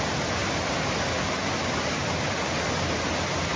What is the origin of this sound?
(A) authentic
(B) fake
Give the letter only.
A